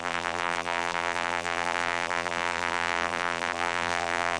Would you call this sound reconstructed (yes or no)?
yes